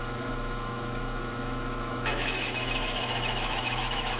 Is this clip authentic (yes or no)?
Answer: no